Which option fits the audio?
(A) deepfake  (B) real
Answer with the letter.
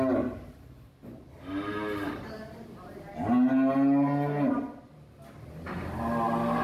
B